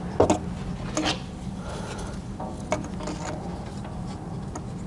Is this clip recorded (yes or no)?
yes